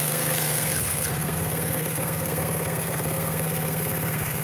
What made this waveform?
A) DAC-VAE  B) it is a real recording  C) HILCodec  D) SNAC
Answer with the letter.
D